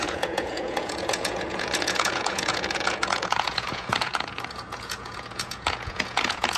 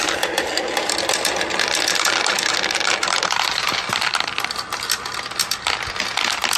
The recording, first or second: second